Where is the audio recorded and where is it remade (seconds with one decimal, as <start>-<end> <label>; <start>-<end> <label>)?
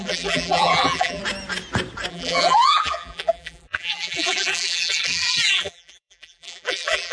0.0-1.2 remade; 1.2-2.1 recorded; 2.1-7.1 remade